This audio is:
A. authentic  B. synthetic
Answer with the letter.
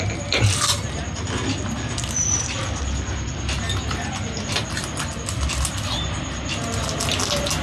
A